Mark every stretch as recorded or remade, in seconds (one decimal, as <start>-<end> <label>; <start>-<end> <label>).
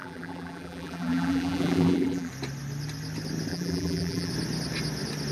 0.0-2.3 remade; 2.3-3.5 recorded; 3.5-4.3 remade; 4.3-5.3 recorded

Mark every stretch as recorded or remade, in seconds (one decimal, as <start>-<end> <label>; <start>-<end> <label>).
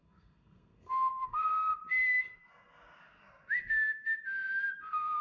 0.0-1.7 remade; 1.7-4.8 recorded; 4.8-5.2 remade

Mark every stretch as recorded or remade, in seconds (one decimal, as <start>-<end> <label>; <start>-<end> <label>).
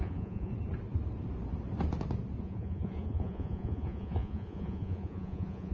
0.0-0.5 remade; 0.5-2.4 recorded; 2.4-5.7 remade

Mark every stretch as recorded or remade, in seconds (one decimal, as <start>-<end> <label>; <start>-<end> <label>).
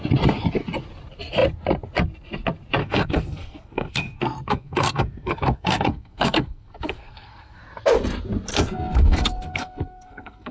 0.0-2.8 recorded; 2.8-7.6 remade; 7.6-8.5 recorded; 8.5-10.5 remade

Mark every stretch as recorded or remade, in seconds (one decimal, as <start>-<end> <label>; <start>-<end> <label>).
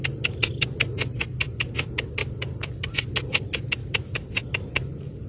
0.0-2.2 recorded; 2.2-2.9 remade; 2.9-3.8 recorded; 3.8-4.4 remade; 4.4-5.3 recorded